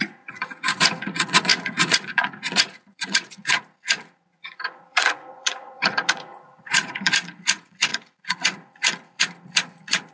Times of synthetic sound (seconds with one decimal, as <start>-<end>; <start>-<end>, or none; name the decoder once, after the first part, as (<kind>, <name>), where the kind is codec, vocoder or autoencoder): 0.0-10.1 (vocoder, Vocos)